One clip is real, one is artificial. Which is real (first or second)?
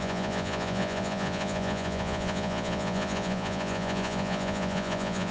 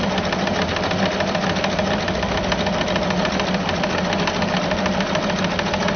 second